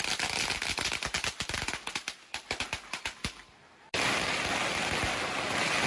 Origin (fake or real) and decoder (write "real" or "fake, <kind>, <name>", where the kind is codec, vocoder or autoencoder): real